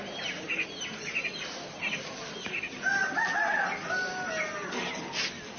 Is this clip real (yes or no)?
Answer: yes